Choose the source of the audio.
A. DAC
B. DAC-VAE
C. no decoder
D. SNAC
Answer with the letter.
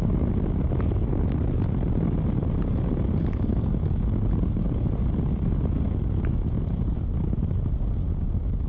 C